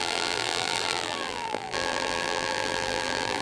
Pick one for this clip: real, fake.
fake